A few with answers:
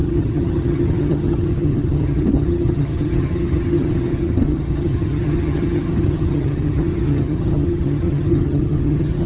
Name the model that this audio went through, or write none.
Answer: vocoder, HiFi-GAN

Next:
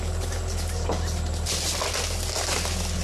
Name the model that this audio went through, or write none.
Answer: none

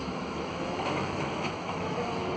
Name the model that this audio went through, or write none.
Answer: autoencoder, DAC-VAE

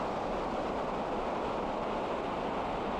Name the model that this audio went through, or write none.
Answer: none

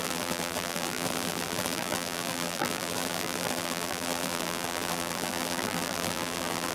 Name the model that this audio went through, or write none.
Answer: vocoder, BigVGAN v2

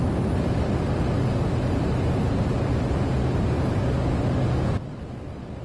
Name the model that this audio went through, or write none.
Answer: none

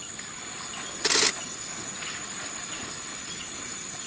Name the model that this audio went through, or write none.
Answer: none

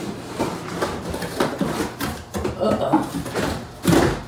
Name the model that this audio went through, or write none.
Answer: none